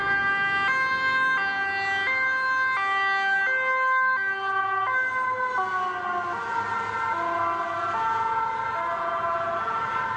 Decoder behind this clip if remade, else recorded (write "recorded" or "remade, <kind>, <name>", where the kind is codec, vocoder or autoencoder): recorded